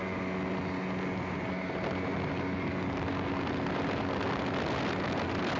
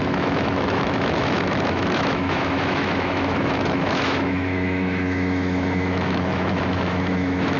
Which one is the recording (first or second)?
first